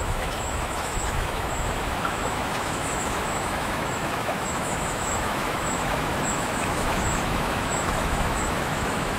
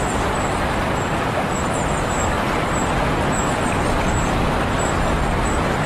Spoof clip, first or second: first